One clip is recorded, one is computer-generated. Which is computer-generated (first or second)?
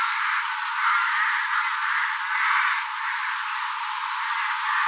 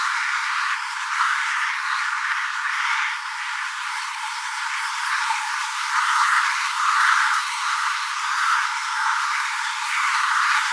second